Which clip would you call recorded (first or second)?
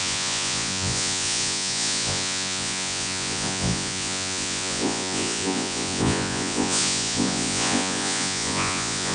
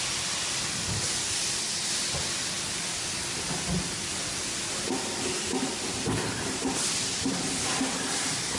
second